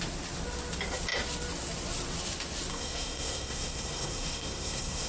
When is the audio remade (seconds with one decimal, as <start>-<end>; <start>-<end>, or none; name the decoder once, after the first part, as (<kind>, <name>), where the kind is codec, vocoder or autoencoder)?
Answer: 2.7-5.1 (codec, SNAC)